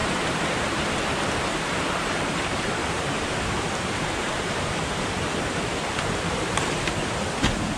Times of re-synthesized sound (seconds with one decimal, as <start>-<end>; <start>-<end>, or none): 0.0-0.9; 1.5-2.4; 2.8-6.9